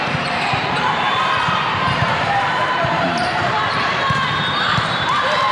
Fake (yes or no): yes